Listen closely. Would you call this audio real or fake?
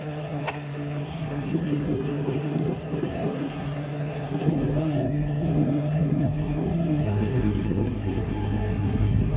fake